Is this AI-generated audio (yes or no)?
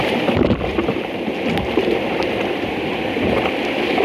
yes